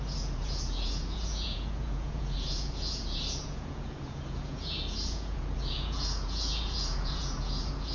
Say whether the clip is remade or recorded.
remade